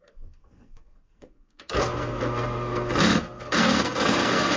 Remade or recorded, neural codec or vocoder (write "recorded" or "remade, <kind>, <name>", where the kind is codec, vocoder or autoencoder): remade, codec, SNAC